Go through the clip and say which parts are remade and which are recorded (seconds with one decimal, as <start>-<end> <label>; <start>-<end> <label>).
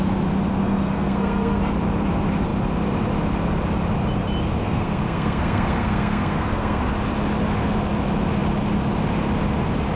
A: 0.0-0.6 recorded; 0.6-1.6 remade; 1.6-4.6 recorded; 4.6-6.8 remade; 6.8-10.0 recorded